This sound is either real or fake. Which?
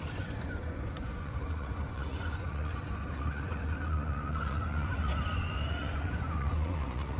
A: fake